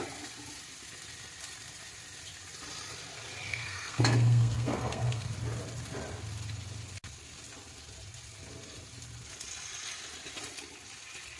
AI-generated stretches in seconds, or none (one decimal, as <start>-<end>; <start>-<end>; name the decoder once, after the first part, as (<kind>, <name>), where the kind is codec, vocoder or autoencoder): 3.5-5.3 (codec, SNAC)